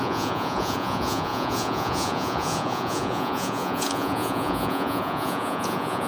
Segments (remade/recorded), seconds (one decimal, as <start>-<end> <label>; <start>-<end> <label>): 0.0-6.1 remade